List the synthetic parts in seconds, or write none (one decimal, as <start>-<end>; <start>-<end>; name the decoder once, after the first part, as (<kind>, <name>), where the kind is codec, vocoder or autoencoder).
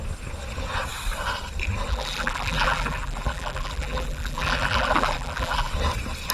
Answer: 1.9-5.7 (vocoder, BigVGAN v2)